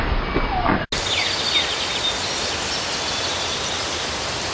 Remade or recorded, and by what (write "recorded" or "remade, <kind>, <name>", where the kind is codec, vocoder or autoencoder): recorded